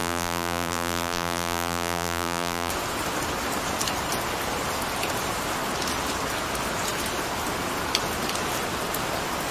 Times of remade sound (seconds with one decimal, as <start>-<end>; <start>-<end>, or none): 0.0-2.7

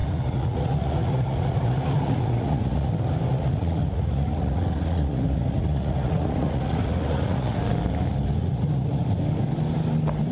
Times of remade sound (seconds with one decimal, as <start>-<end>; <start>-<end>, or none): 0.0-2.9; 3.3-7.6; 8.4-9.2

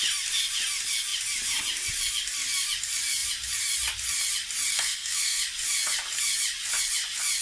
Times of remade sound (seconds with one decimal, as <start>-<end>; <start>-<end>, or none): 4.7-5.4

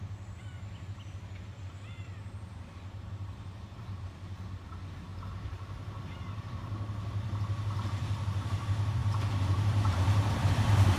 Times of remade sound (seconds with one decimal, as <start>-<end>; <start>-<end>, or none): 0.0-5.1; 6.0-11.0